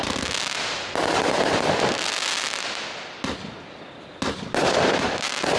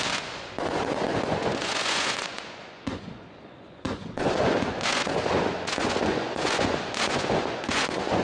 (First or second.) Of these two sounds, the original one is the first